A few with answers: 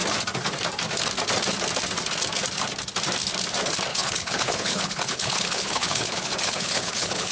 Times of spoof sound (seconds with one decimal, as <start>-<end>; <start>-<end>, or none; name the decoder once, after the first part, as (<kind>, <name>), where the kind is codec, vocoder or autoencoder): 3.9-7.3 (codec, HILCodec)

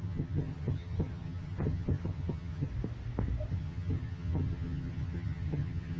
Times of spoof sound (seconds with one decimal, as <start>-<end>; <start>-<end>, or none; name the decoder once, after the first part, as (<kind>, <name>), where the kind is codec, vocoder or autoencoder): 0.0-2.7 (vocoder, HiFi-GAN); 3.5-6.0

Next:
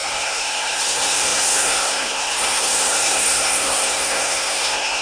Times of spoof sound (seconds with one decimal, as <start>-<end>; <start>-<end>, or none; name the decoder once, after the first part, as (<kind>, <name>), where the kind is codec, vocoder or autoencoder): 0.0-5.0 (codec, SNAC)

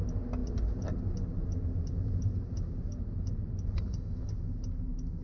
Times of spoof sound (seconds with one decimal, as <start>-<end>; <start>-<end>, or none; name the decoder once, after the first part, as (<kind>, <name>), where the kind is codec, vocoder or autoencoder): none